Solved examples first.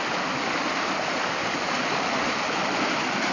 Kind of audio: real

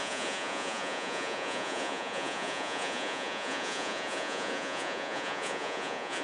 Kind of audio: fake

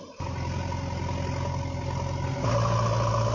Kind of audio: real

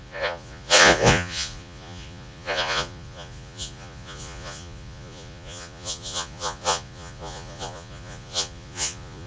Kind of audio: fake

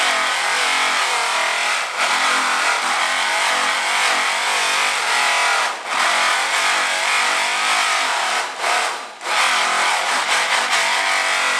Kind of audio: real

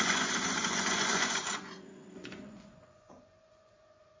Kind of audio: fake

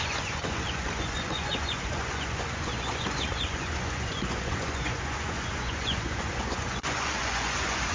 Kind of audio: fake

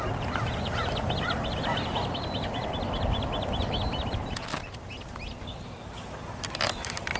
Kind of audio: real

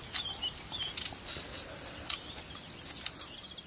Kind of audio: real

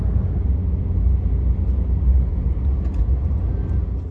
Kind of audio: real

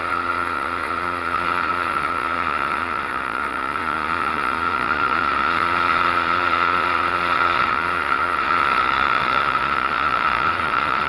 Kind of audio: fake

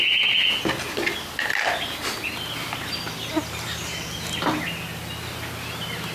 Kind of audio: real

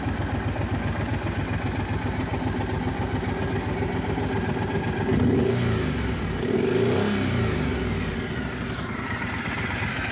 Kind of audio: real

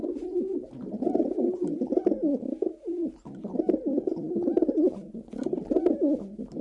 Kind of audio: real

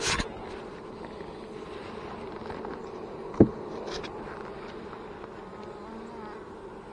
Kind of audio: real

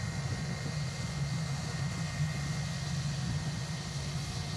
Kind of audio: fake